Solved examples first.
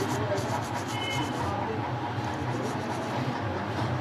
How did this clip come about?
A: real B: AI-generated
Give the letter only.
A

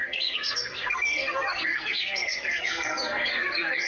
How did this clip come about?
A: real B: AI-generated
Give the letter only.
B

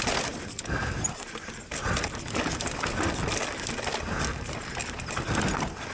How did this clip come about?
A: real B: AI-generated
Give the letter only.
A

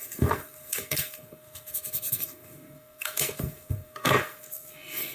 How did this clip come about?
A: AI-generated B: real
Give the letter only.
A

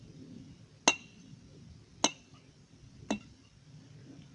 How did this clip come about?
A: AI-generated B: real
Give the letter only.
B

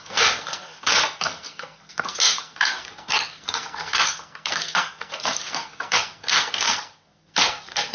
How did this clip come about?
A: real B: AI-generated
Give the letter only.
B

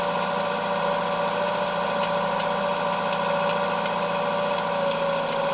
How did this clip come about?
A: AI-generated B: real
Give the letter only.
B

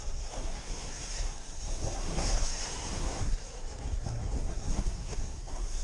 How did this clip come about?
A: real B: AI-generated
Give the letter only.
B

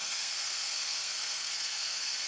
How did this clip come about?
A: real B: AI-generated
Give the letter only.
B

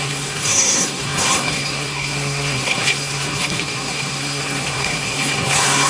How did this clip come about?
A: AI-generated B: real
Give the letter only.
A